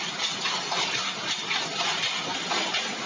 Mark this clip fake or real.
real